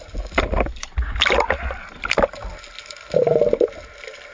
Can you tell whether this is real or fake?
real